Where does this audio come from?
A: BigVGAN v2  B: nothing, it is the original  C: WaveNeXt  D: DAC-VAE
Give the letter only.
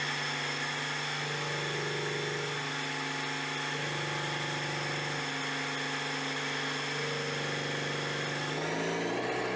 B